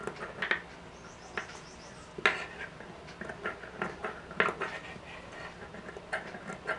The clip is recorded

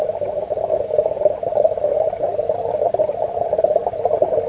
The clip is recorded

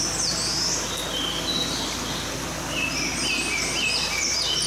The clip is recorded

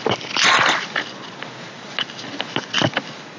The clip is recorded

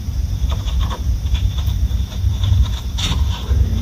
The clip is remade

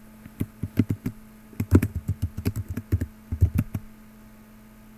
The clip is recorded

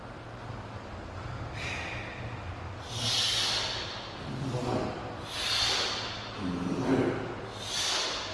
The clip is recorded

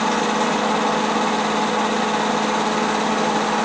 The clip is recorded